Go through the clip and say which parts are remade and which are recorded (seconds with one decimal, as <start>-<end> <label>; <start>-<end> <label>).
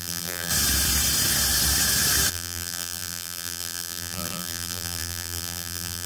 0.0-0.5 remade; 0.5-2.3 recorded; 2.3-6.1 remade